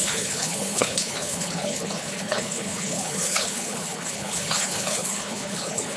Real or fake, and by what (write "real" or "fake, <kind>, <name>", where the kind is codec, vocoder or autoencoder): fake, codec, HILCodec